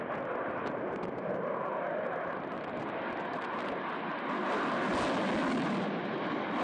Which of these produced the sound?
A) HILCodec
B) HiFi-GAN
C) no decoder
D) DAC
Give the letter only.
C